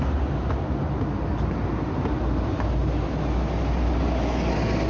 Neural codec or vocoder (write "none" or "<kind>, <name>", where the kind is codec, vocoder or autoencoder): none